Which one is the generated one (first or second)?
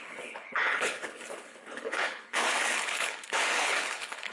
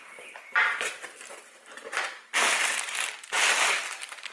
first